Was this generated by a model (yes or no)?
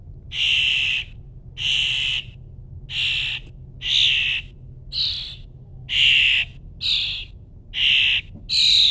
no